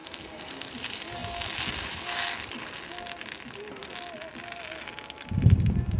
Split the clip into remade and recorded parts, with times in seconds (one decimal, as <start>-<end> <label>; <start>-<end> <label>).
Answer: 0.0-0.7 remade; 0.7-6.0 recorded